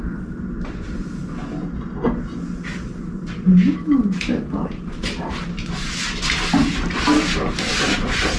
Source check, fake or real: real